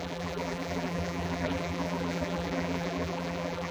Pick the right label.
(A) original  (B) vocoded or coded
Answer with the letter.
B